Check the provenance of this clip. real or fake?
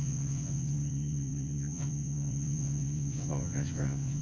fake